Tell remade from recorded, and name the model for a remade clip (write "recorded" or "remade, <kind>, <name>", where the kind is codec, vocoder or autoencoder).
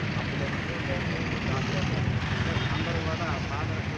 recorded